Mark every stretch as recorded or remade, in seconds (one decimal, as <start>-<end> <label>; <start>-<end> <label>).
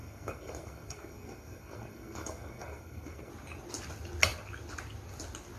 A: 0.0-3.3 remade; 3.3-5.6 recorded